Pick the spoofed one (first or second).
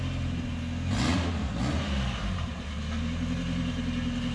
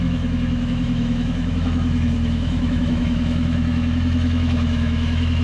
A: second